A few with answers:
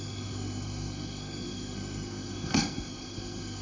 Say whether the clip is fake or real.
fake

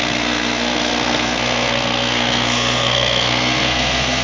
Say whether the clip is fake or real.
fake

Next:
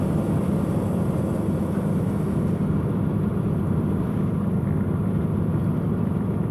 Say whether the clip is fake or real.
real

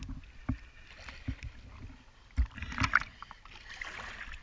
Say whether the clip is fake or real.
real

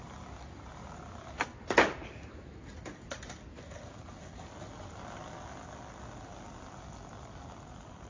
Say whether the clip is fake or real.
real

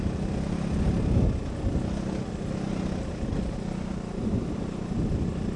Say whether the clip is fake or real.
real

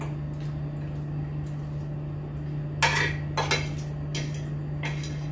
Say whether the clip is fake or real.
real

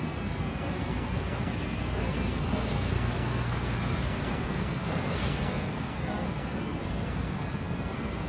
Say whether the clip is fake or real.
fake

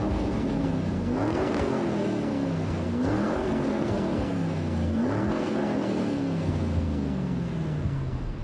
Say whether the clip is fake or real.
fake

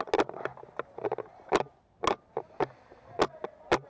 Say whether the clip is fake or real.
real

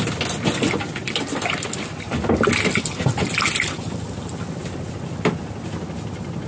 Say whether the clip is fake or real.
real